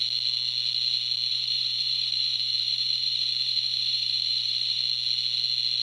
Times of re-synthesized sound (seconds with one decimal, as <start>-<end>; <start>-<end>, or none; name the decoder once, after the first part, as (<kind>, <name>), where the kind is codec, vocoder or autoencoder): 1.3-4.8 (vocoder, BigVGAN v2)